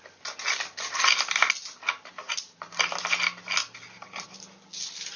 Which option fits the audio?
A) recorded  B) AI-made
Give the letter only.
A